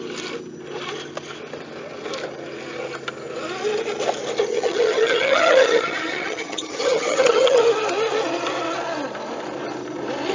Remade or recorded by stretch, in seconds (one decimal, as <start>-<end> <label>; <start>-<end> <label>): 0.0-4.5 recorded; 4.5-7.6 remade; 7.6-10.3 recorded